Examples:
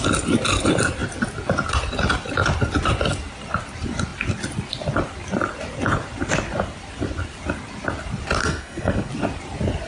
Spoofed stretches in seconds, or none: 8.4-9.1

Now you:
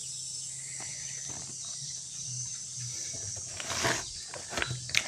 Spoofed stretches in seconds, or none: 0.8-2.7

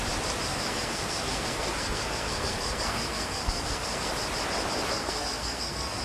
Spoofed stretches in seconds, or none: 0.5-4.1; 4.9-6.0

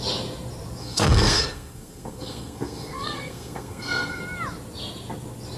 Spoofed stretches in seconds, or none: 0.8-4.2

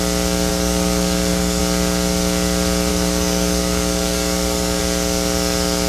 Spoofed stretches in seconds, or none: 0.5-1.6; 2.9-4.8

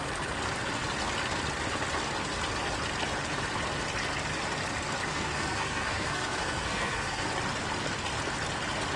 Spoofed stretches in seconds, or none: 5.1-7.3